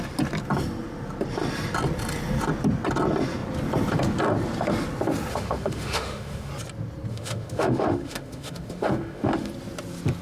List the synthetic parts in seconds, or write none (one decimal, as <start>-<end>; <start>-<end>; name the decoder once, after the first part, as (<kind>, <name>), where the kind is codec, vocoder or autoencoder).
5.3-6.5 (autoencoder, DAC-VAE); 7.1-9.5